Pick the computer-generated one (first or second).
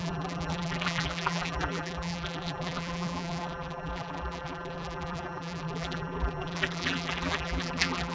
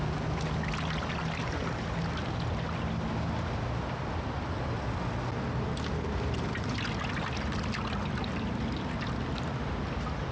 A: first